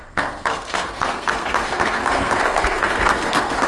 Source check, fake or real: fake